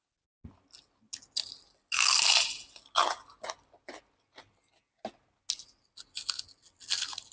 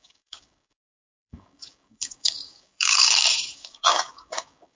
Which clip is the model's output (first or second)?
second